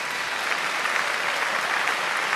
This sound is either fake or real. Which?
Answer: real